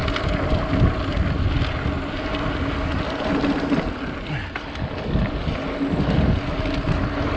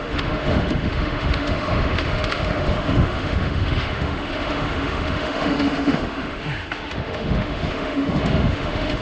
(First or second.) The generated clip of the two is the second